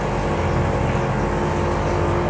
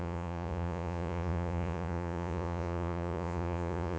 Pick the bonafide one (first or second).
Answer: first